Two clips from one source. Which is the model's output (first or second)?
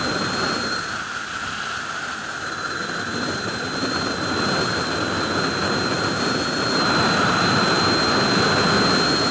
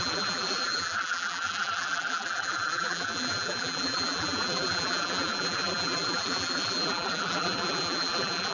second